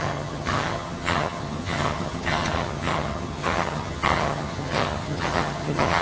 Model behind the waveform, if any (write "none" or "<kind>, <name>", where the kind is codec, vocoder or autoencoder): vocoder, HiFi-GAN